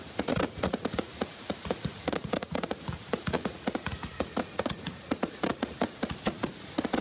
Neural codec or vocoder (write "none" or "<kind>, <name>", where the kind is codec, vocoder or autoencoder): vocoder, Vocos